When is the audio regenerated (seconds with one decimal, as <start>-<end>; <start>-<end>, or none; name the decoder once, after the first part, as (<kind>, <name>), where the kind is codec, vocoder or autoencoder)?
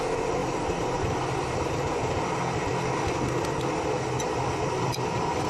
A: 0.4-3.7 (vocoder, BigVGAN v2)